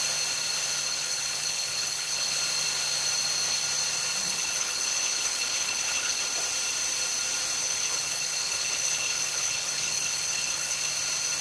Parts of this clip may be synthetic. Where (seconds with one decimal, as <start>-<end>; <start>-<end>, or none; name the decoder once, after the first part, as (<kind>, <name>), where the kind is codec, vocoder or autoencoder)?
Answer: 0.9-2.4 (codec, HILCodec); 4.2-6.2; 7.6-10.9